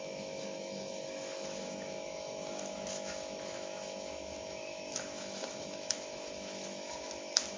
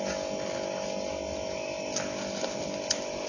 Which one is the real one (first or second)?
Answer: second